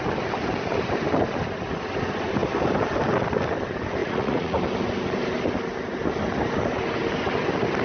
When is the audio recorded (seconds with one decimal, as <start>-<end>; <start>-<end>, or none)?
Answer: 0.0-4.0; 4.6-7.8